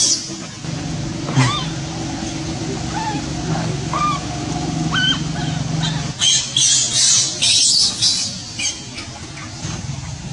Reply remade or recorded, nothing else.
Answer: recorded